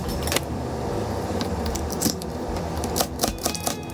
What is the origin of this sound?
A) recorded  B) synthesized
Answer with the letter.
B